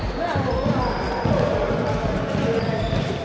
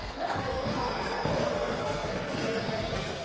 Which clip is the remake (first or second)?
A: second